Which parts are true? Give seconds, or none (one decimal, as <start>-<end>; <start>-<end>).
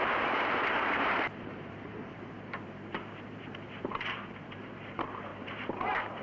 none